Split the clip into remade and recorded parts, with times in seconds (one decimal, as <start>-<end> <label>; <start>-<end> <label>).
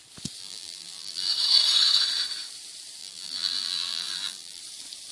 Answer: 0.0-0.4 recorded; 0.4-1.3 remade; 1.3-3.0 recorded; 3.0-4.6 remade; 4.6-5.1 recorded